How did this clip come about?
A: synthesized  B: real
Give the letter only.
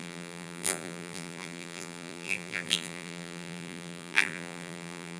A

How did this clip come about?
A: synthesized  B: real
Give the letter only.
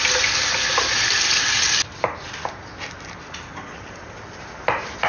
B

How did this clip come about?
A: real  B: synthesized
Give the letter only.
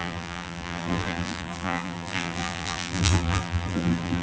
B